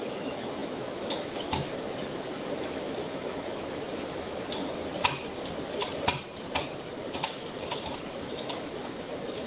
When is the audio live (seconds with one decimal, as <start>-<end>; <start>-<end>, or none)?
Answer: 4.9-6.8